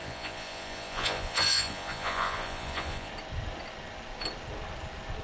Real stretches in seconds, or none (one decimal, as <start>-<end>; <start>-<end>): 3.1-5.2